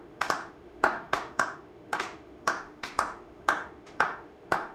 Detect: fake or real fake